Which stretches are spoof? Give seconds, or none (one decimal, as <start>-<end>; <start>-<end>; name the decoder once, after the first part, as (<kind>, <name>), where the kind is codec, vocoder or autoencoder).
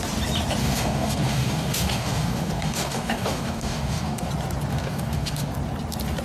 0.6-4.3 (codec, DAC); 4.7-5.5